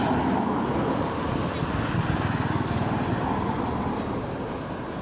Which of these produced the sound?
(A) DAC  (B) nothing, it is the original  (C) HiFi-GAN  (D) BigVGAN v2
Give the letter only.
B